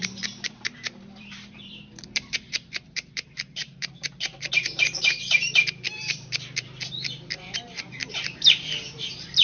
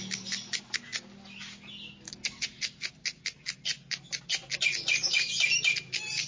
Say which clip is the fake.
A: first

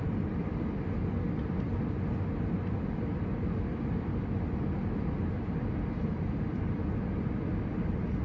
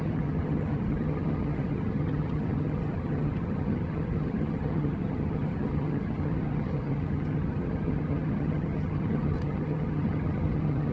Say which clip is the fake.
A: second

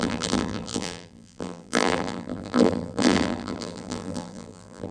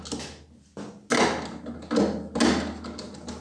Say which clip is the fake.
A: first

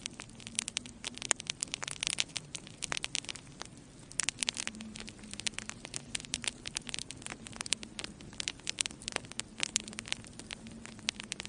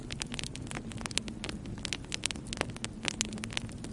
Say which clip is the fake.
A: first